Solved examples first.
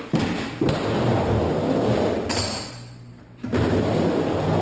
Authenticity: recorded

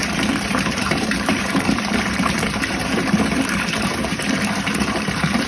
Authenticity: remade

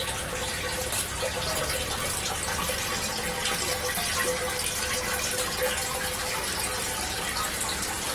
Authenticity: recorded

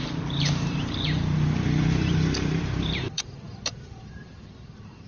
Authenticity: remade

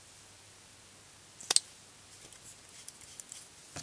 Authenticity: recorded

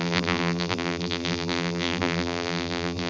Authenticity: remade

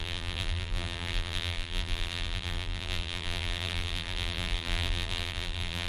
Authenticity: remade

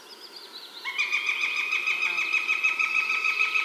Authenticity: recorded